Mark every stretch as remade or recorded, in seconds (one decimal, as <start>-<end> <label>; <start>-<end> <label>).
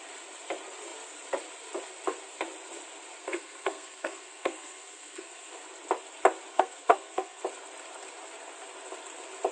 0.0-3.2 recorded; 3.2-5.5 remade; 5.5-6.5 recorded; 6.5-7.4 remade; 7.4-9.5 recorded